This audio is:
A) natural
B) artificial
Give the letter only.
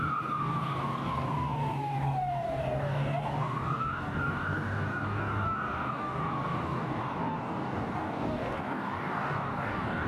B